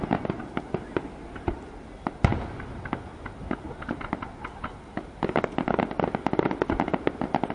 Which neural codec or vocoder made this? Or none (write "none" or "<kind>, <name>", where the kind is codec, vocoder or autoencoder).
none